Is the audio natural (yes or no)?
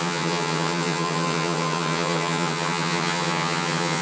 no